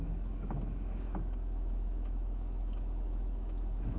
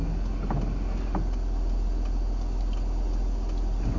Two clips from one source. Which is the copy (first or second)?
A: first